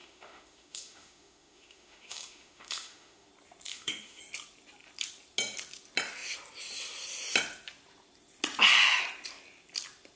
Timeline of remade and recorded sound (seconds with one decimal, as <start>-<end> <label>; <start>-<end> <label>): 0.0-3.3 remade; 3.3-3.7 recorded; 3.7-4.2 remade; 4.2-10.2 recorded